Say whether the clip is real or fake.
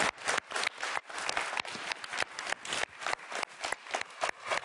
real